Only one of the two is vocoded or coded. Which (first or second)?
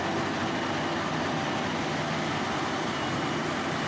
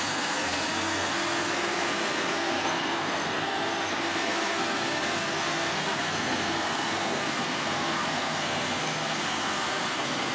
second